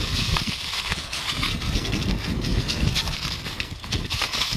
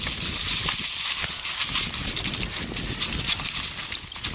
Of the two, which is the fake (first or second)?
first